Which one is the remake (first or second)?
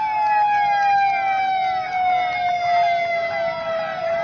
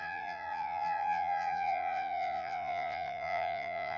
second